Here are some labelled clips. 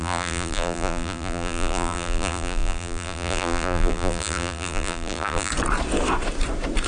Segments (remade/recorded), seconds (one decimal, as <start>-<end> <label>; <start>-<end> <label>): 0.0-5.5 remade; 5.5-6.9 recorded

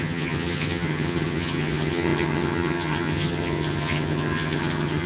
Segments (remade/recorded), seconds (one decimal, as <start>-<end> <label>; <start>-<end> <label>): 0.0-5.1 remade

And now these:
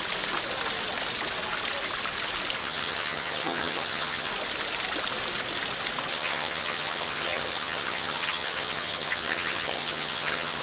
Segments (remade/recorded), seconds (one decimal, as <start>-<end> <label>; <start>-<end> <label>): 0.0-2.6 recorded; 2.6-4.3 remade; 4.3-6.1 recorded; 6.1-10.6 remade

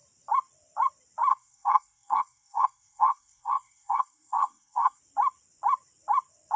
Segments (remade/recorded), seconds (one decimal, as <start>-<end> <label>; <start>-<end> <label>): 0.0-1.3 recorded; 1.3-5.0 remade; 5.0-6.6 recorded